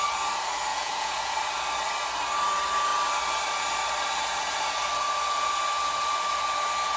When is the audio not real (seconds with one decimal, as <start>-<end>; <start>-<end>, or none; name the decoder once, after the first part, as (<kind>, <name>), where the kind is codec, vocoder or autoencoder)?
0.7-1.3 (vocoder, Vocos)